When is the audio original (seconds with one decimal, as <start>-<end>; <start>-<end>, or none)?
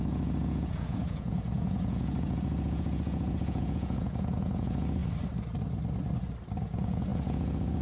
5.0-6.6